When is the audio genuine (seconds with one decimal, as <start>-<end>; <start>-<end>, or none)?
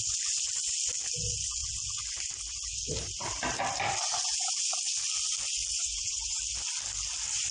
0.0-5.7; 6.4-7.5